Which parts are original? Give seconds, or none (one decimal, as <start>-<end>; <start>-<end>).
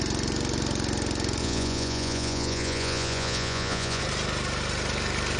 0.0-1.4; 4.0-5.4